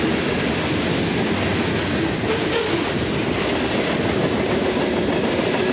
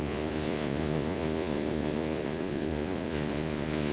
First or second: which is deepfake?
second